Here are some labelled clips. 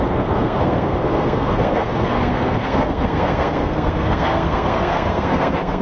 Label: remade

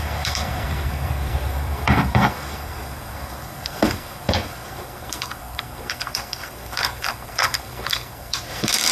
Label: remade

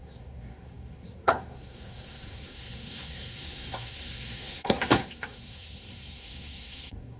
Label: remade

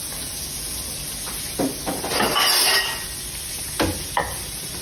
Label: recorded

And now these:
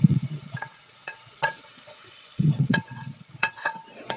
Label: remade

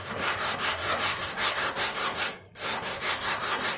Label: remade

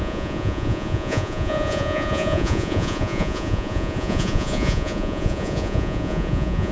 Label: remade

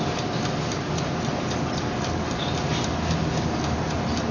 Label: recorded